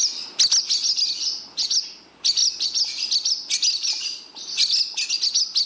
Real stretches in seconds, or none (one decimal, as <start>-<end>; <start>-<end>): 0.0-5.7